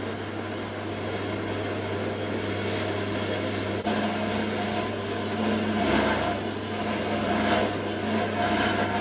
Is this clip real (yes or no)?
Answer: yes